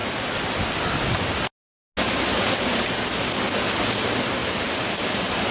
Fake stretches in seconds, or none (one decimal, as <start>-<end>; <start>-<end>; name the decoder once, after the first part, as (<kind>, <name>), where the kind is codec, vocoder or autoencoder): 4.4-5.5 (vocoder, BigVGAN v2)